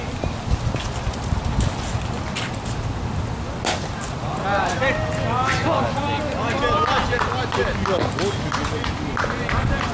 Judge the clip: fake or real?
real